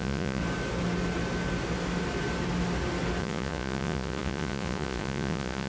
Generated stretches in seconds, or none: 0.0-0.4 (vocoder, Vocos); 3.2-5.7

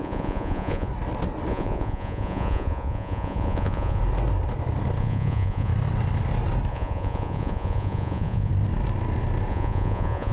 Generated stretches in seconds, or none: 0.0-0.9 (vocoder, Vocos); 1.5-4.0; 5.0-5.7; 6.7-8.5; 9.5-10.3

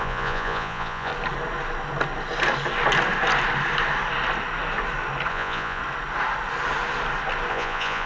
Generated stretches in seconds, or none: 0.0-1.1 (vocoder, Vocos); 5.3-5.8; 7.5-8.1

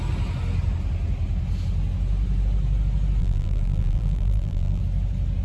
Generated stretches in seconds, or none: 3.2-4.8 (vocoder, BigVGAN v2)